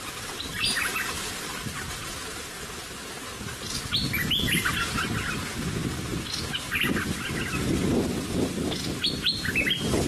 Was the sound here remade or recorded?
recorded